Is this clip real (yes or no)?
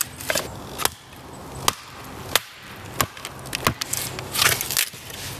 yes